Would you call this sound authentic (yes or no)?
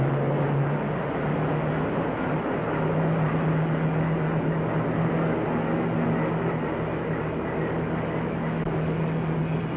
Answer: yes